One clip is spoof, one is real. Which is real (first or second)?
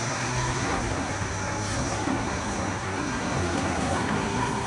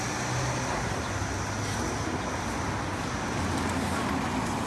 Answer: second